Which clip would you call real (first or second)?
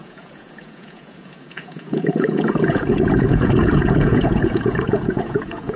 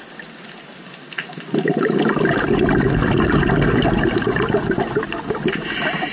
second